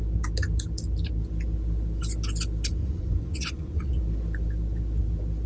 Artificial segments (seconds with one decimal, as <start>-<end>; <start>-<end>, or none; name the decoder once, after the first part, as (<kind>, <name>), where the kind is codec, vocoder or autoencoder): 2.8-4.0 (vocoder, Vocos)